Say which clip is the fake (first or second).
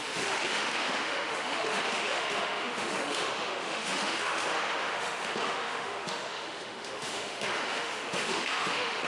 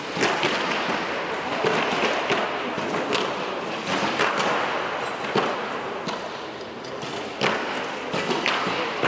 first